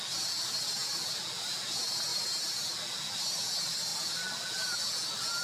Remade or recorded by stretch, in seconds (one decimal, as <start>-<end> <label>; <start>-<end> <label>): 0.0-5.4 recorded